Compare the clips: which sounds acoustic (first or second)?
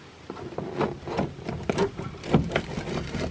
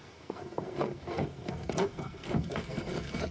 first